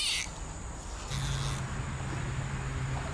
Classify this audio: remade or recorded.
recorded